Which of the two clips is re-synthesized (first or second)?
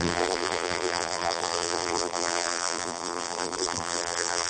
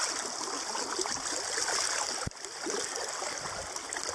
first